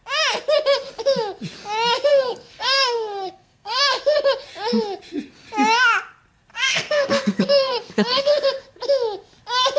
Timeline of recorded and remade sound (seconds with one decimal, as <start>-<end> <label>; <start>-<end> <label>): 0.0-2.1 recorded; 2.1-3.8 remade; 3.8-6.5 recorded; 6.5-8.3 remade; 8.3-9.8 recorded